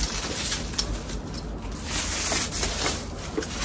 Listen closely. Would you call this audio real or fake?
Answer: real